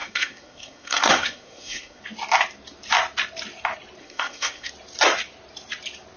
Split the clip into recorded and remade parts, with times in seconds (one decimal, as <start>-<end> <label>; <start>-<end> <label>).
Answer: 0.0-2.0 remade; 2.0-4.0 recorded; 4.0-4.7 remade; 4.7-6.2 recorded